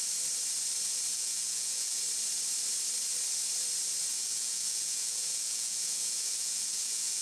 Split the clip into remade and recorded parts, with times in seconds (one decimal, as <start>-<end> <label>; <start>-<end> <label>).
0.0-1.1 recorded; 1.1-2.0 remade; 2.0-4.1 recorded; 4.1-7.2 remade